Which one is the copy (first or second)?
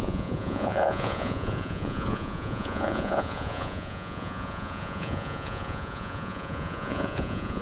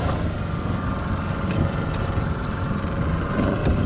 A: first